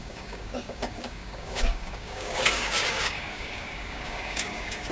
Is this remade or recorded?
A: remade